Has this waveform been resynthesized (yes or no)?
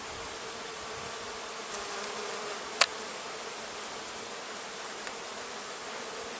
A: no